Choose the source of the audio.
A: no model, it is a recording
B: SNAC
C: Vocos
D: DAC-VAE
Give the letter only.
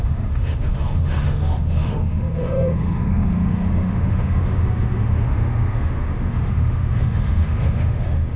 D